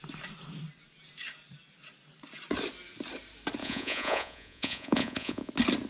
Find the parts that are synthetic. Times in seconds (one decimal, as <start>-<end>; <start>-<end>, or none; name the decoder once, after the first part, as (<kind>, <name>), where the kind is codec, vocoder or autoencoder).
3.6-5.5 (vocoder, Vocos)